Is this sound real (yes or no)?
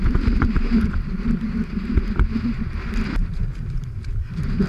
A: yes